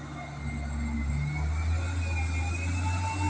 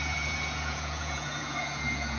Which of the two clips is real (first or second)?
first